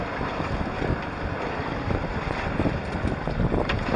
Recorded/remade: remade